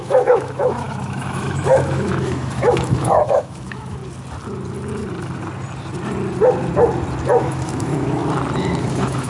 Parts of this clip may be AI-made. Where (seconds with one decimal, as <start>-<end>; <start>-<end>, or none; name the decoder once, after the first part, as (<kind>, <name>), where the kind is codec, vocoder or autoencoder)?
0.0-4.0 (autoencoder, DAC-VAE); 7.4-8.2; 8.8-9.3

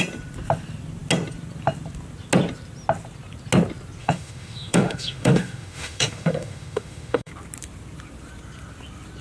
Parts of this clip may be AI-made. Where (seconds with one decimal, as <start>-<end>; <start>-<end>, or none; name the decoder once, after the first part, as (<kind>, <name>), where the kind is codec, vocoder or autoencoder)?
4.0-7.3 (autoencoder, DAC-VAE)

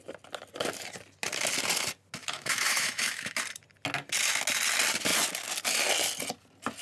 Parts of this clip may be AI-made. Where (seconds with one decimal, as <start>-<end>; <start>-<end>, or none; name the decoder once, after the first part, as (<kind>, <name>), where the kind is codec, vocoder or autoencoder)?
2.2-3.4 (autoencoder, DAC-VAE)

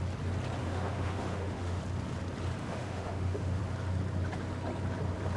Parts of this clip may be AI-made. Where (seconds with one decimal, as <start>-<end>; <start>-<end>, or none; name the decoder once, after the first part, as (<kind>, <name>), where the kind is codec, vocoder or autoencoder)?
0.6-1.8 (autoencoder, DAC-VAE); 2.6-3.6

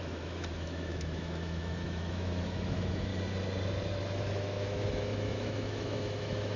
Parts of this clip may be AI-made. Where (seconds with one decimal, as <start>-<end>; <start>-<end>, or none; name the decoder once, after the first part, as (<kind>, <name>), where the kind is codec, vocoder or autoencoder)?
0.0-3.1 (autoencoder, DAC-VAE); 4.2-6.6

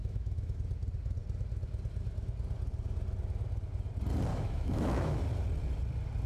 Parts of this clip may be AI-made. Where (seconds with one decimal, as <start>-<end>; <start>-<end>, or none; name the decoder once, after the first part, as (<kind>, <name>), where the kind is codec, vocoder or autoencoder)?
0.0-0.6 (autoencoder, DAC-VAE); 4.3-5.2

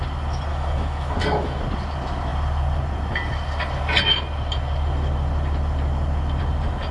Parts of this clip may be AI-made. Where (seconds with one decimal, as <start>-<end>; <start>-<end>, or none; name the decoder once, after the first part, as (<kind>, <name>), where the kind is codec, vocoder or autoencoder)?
0.5-1.6 (autoencoder, DAC-VAE)